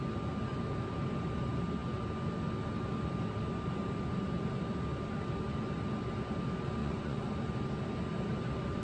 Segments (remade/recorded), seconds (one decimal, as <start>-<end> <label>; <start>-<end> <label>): 0.0-6.8 recorded; 6.8-7.3 remade; 7.3-8.8 recorded